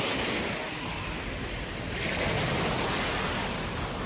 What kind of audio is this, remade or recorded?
recorded